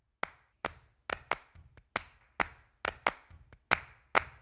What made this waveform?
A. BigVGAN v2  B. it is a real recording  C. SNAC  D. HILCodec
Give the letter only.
B